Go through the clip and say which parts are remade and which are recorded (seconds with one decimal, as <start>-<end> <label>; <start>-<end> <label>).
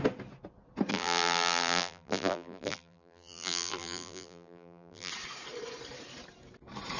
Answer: 0.0-0.9 recorded; 0.9-5.1 remade; 5.1-7.0 recorded